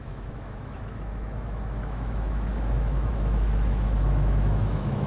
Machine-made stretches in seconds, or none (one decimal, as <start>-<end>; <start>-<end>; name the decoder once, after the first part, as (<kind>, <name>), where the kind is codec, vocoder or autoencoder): 0.0-5.1 (autoencoder, DAC-VAE)